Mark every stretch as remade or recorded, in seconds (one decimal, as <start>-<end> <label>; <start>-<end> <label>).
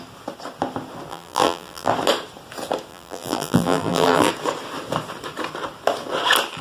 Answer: 0.0-1.1 recorded; 1.1-1.9 remade; 1.9-2.9 recorded; 2.9-4.3 remade; 4.3-6.6 recorded